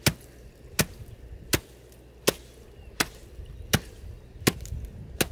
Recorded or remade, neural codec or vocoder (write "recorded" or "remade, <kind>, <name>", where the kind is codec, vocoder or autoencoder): recorded